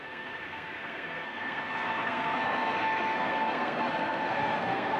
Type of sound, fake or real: fake